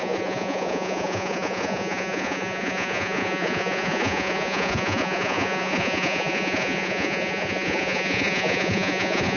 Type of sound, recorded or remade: remade